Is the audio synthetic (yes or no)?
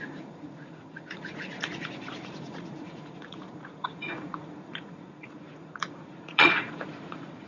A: yes